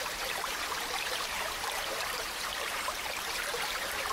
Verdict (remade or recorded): remade